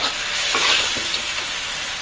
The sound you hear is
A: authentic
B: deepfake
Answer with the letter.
B